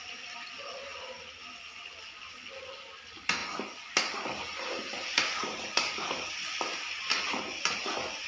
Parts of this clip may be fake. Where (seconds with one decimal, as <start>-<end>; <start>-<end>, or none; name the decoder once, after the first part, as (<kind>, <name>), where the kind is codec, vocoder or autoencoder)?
none